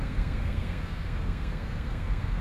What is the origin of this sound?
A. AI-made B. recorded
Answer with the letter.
A